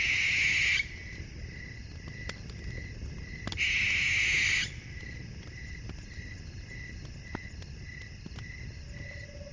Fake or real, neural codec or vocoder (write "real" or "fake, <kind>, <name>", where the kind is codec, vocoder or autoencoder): real